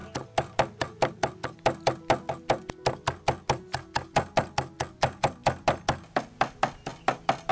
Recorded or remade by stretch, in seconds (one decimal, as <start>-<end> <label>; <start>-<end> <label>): 0.0-7.5 recorded